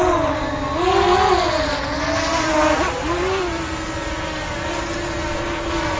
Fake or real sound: real